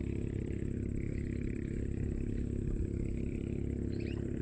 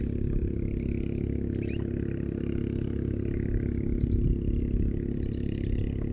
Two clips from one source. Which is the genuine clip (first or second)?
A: second